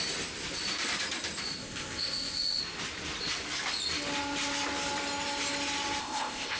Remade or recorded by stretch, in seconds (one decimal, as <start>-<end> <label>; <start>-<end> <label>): 0.0-1.6 recorded; 1.6-2.6 remade; 2.6-6.0 recorded; 6.0-6.6 remade